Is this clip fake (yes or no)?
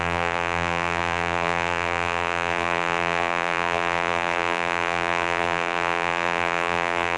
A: yes